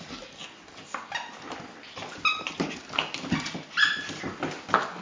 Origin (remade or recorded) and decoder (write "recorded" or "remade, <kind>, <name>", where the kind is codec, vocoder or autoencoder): recorded